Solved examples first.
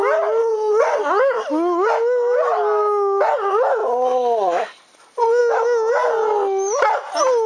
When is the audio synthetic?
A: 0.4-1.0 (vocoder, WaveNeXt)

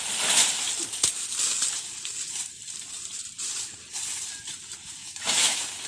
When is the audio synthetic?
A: 5.0-5.9 (autoencoder, DAC-VAE)

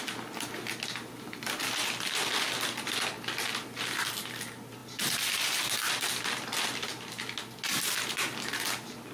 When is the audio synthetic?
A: none

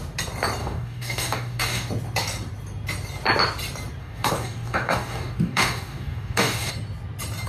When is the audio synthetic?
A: 0.6-1.9 (codec, DAC); 4.0-6.7

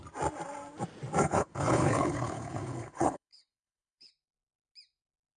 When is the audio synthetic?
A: 1.2-4.1 (codec, HILCodec)

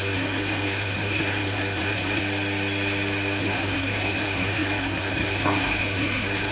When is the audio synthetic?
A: 0.0-2.2 (codec, SNAC); 3.4-6.5

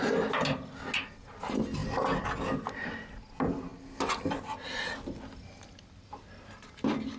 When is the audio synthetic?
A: none

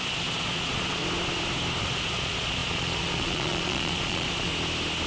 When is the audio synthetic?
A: 0.0-1.0 (vocoder, Vocos); 1.8-4.5